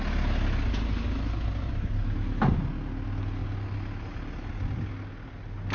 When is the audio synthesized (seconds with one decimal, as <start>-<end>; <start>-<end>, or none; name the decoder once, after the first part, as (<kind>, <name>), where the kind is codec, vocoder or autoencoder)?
none